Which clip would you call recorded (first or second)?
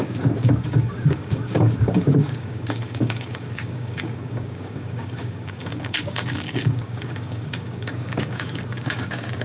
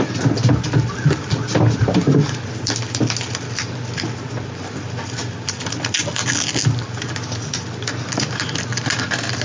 second